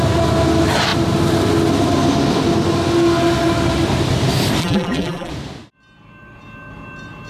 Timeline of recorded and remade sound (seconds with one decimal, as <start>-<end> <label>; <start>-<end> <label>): 0.0-4.6 recorded; 4.6-5.3 remade; 5.3-7.3 recorded